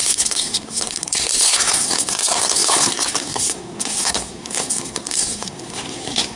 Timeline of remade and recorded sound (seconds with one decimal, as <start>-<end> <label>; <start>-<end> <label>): 0.0-6.4 remade